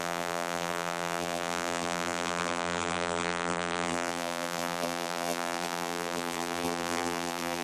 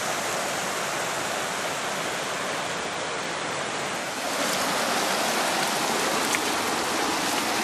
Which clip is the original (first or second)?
second